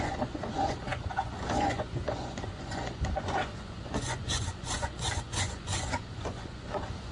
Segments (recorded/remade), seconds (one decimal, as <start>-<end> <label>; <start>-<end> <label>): 0.0-7.1 remade